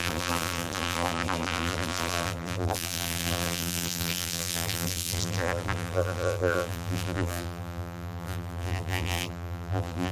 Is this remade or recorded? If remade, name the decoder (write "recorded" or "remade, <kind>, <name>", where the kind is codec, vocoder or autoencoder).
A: remade, vocoder, BigVGAN v2